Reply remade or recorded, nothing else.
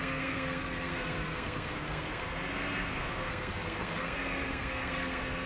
remade